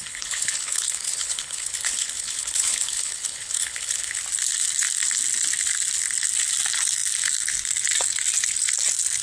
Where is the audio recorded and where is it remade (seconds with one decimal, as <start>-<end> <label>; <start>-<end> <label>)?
0.0-4.2 remade; 4.2-9.2 recorded

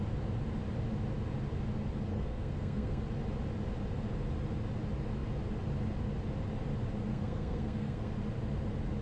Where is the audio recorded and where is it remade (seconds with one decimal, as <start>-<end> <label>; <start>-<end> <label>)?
0.0-2.1 recorded; 2.1-3.0 remade; 3.0-7.1 recorded; 7.1-8.1 remade; 8.1-9.0 recorded

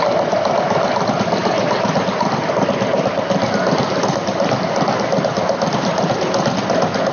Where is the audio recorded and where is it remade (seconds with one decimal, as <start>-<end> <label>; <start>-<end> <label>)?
0.0-7.1 recorded

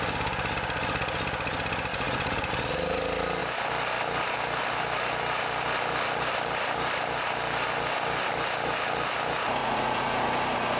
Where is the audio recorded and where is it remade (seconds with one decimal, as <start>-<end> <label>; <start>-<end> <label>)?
0.0-1.9 recorded; 1.9-2.5 remade; 2.5-9.6 recorded; 9.6-10.2 remade; 10.2-10.8 recorded

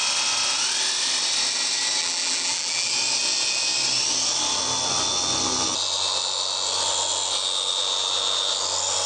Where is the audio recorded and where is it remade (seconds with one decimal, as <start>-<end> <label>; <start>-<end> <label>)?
0.0-2.0 recorded; 2.0-2.9 remade; 2.9-9.1 recorded